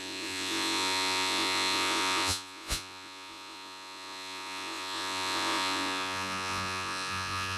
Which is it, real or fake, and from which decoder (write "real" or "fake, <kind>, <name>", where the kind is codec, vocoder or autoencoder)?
fake, vocoder, Vocos